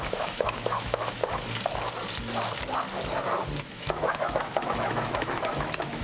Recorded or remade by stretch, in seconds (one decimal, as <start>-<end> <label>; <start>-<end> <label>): 0.0-1.2 remade; 1.2-3.6 recorded; 3.6-6.0 remade